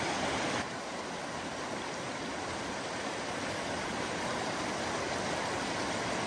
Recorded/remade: recorded